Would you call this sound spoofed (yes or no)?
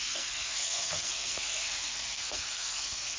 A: yes